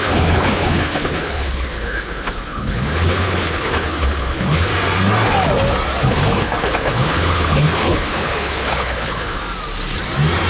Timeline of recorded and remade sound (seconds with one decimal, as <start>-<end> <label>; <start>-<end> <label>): 0.0-4.7 remade; 4.7-6.0 recorded; 6.0-9.4 remade; 9.4-10.5 recorded